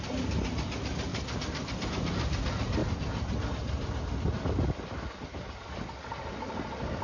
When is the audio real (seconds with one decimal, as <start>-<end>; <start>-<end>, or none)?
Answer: 0.0-7.0